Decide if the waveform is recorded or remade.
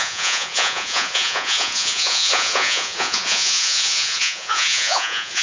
remade